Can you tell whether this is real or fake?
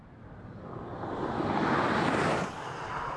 real